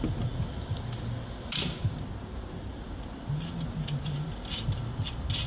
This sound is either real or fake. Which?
real